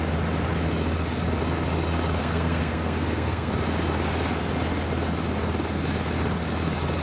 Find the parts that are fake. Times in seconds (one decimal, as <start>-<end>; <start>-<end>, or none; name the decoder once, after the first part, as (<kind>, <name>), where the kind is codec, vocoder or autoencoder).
2.2-3.5 (codec, SNAC)